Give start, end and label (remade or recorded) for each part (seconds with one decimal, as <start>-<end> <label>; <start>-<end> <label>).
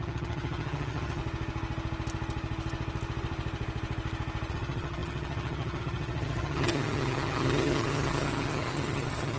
0.0-1.2 remade; 1.2-4.5 recorded; 4.5-9.4 remade